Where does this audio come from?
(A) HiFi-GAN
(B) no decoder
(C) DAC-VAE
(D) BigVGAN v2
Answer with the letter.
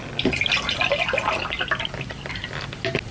B